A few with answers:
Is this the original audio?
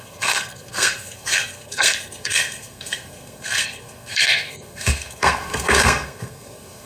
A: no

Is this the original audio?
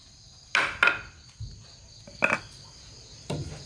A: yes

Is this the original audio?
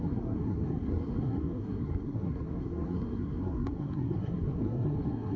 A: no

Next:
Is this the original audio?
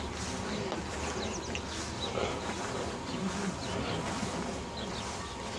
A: yes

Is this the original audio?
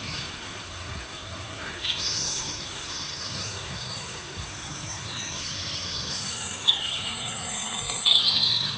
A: no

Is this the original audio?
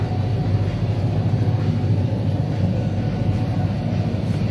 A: yes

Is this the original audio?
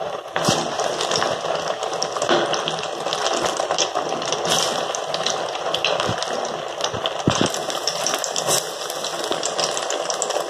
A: yes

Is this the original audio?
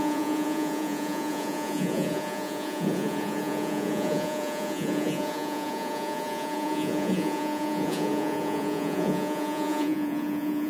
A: no